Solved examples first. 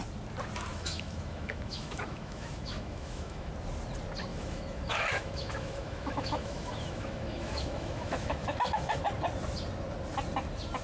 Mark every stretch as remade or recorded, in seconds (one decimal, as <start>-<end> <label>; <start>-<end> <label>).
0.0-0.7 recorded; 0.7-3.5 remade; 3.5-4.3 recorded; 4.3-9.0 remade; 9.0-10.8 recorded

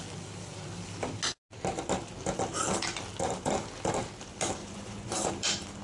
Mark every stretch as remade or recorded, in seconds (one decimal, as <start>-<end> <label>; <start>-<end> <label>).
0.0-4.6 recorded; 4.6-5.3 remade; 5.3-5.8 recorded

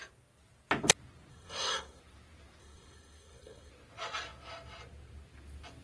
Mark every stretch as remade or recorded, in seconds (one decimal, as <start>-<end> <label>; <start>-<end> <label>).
0.0-1.3 recorded; 1.3-2.0 remade; 2.0-2.6 recorded; 2.6-3.7 remade; 3.7-5.8 recorded

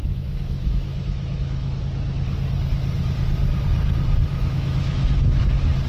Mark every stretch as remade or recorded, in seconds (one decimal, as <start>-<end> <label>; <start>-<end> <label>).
0.0-1.8 remade; 1.8-4.3 recorded; 4.3-5.4 remade; 5.4-5.9 recorded

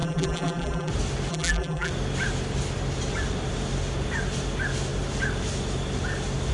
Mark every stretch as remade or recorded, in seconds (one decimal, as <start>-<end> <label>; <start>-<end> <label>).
0.0-0.9 remade; 0.9-1.3 recorded; 1.3-1.9 remade; 1.9-6.5 recorded

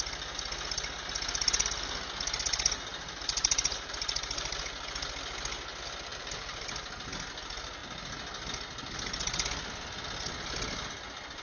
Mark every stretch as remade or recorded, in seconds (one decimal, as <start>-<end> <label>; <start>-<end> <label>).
0.0-2.9 recorded; 2.9-4.6 remade; 4.6-6.1 recorded; 6.1-6.9 remade; 6.9-11.4 recorded

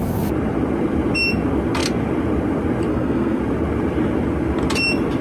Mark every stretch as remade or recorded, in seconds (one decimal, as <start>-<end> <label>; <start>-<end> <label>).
0.0-2.9 recorded; 2.9-3.4 remade; 3.4-5.2 recorded

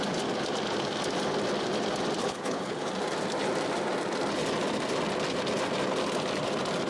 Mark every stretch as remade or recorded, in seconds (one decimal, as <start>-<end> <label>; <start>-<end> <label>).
0.0-2.2 recorded; 2.2-2.9 remade; 2.9-6.9 recorded